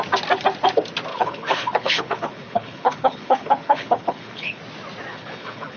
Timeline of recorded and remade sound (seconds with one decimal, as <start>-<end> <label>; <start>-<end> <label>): 0.0-1.1 recorded; 1.1-4.6 remade; 4.6-5.1 recorded; 5.1-5.8 remade